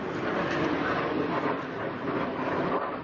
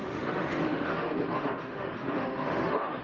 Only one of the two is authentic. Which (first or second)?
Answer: first